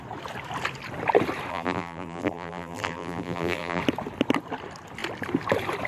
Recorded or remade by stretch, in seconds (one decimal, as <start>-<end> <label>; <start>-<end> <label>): 0.0-1.5 recorded; 1.5-3.8 remade; 3.8-5.9 recorded